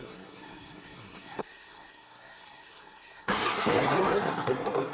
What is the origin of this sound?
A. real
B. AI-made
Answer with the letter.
B